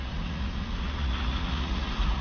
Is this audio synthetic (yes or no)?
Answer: yes